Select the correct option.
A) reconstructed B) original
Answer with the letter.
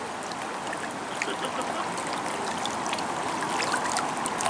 B